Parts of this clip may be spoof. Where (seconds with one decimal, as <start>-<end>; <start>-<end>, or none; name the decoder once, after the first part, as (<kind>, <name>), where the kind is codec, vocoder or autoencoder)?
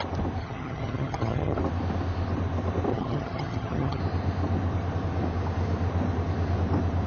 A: 0.4-1.6 (vocoder, HiFi-GAN); 2.9-4.0